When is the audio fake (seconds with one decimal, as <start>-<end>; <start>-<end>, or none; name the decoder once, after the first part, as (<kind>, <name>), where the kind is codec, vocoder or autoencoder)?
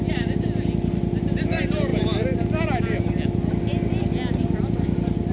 none